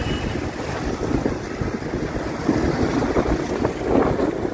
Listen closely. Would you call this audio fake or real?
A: real